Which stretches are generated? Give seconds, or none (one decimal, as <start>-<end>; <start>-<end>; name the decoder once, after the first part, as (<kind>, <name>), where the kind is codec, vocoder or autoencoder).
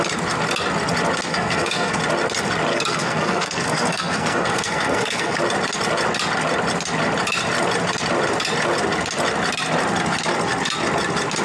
1.3-2.0 (codec, SNAC); 2.7-5.4